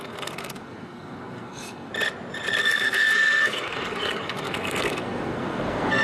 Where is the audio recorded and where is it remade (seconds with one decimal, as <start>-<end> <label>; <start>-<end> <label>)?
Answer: 0.0-1.9 remade; 1.9-2.6 recorded; 2.6-6.0 remade